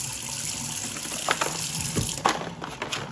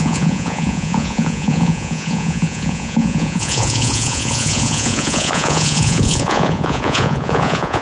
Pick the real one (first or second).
first